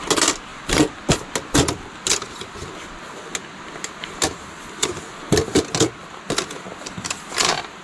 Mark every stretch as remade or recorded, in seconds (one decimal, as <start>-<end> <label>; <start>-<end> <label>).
0.0-7.8 recorded